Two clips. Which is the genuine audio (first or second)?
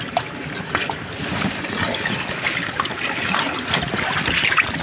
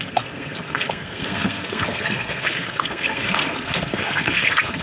first